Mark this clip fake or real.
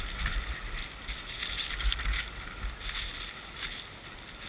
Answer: real